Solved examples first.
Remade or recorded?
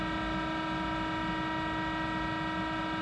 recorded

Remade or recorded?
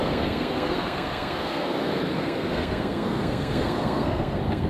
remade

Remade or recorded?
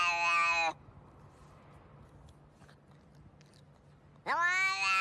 recorded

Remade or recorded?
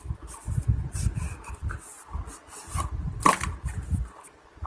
recorded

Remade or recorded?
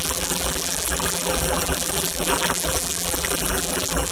remade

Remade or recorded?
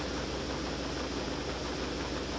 recorded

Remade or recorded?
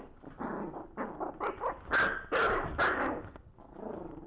recorded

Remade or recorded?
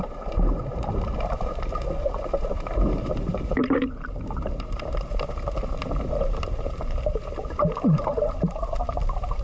remade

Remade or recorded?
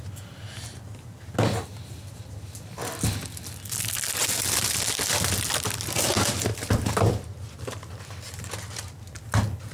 recorded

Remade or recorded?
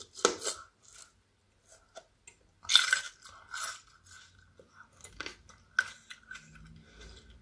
recorded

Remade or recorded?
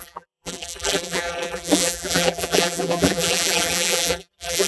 remade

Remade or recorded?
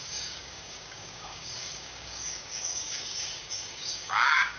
remade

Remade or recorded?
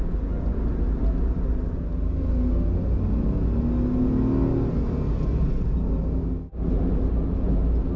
recorded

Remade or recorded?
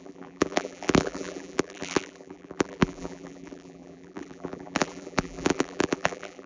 remade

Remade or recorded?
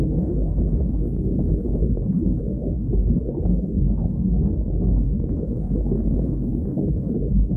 remade